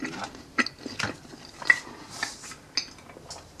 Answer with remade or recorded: recorded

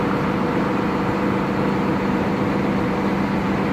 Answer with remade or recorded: recorded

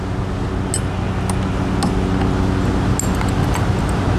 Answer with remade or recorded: recorded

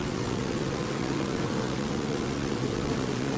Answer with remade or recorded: remade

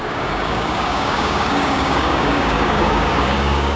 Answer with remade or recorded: remade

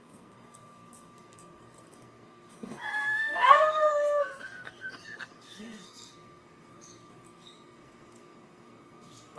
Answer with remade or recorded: remade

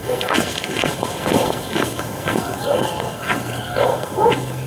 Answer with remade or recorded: remade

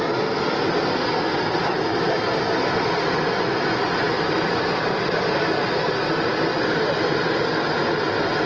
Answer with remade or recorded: recorded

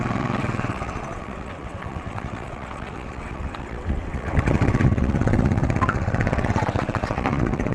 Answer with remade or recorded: remade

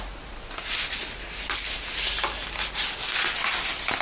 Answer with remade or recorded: recorded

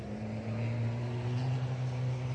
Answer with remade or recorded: recorded